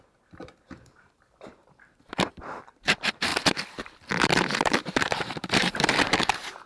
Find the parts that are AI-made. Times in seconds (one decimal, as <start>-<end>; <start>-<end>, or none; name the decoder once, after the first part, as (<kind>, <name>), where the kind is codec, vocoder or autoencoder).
0.0-2.3 (vocoder, BigVGAN v2); 2.8-3.3; 4.2-6.7

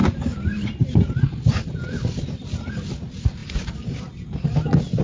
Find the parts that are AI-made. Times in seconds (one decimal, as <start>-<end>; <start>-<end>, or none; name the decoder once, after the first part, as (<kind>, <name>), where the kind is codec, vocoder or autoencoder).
0.0-3.0 (vocoder, BigVGAN v2)